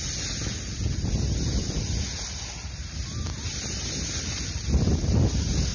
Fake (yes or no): no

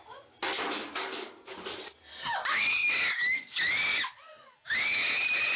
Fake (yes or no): no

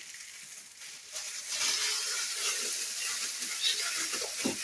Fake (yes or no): no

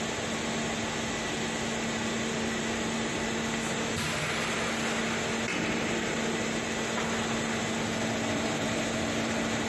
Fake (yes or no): no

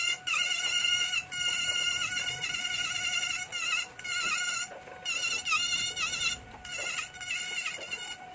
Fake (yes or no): no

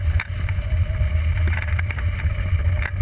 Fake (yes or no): no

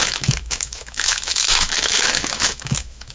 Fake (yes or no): yes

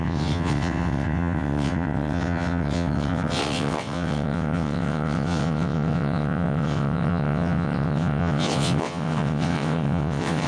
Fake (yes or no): yes